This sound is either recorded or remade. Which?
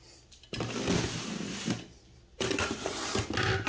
recorded